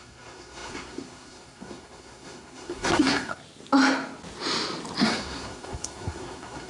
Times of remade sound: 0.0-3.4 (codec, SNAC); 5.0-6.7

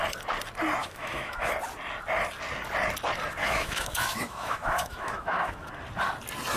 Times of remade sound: 0.8-1.5 (autoencoder, DAC-VAE); 3.4-5.7

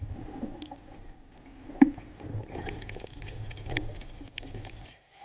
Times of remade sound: none

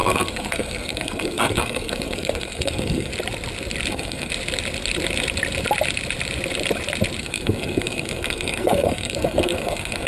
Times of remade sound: 0.0-3.1 (codec, SNAC); 3.9-4.3; 7.2-10.1